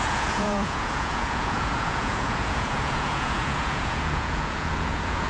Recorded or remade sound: remade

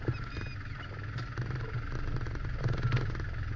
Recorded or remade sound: recorded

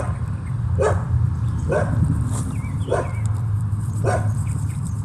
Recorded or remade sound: remade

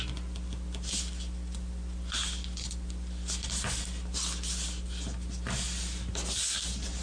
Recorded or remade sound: recorded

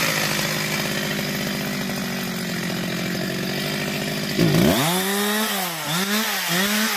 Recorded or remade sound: recorded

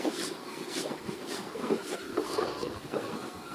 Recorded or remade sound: remade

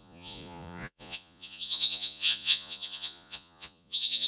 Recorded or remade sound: remade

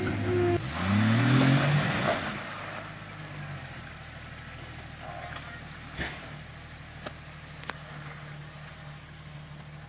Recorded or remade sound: recorded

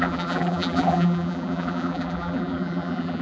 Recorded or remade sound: remade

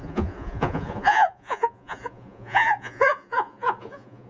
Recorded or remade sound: remade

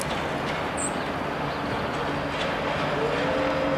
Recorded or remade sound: recorded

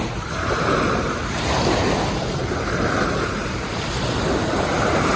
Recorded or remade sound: recorded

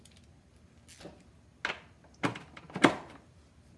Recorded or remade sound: recorded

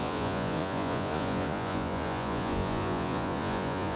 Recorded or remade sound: remade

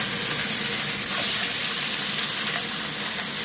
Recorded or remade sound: recorded